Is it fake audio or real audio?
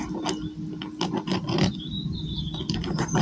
real